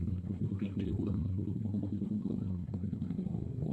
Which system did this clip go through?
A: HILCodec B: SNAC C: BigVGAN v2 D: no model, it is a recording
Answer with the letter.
B